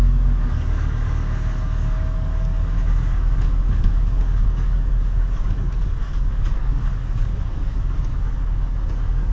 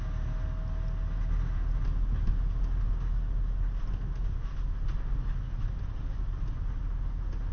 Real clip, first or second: second